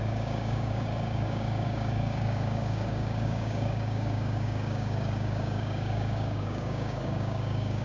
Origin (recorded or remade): remade